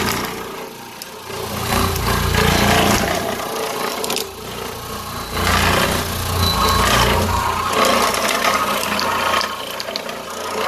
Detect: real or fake real